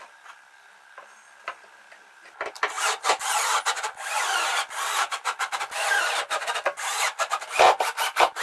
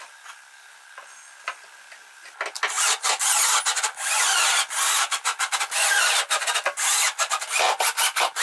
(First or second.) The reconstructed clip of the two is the first